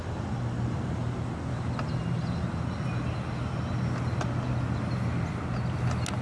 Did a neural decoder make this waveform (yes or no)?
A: no